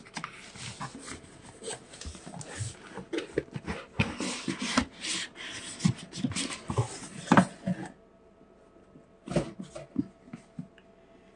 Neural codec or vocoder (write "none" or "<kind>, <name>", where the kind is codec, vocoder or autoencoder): none